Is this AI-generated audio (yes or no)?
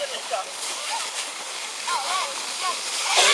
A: yes